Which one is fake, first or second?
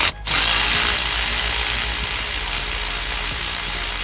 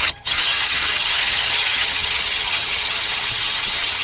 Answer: second